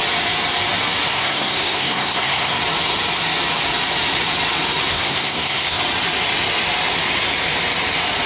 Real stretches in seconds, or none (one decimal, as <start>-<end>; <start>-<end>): 0.0-1.1; 2.6-4.9; 5.8-8.3